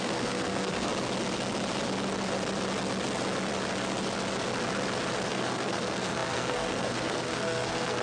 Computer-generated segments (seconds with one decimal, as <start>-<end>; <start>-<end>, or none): 0.0-0.9; 5.3-8.0